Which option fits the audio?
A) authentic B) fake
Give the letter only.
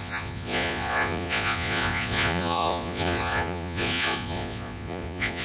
B